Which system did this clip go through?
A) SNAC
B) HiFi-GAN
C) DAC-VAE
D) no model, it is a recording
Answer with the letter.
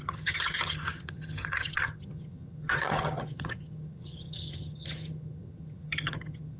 B